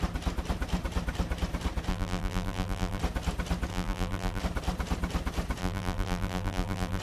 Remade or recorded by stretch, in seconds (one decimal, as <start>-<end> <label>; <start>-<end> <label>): 0.0-1.9 recorded; 1.9-3.0 remade; 3.0-3.7 recorded; 3.7-4.4 remade; 4.4-5.6 recorded; 5.6-7.0 remade